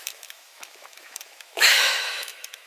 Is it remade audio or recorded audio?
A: remade